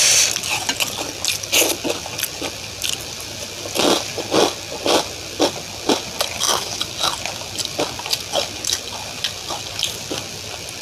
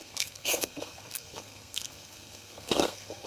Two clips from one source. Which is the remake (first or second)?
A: second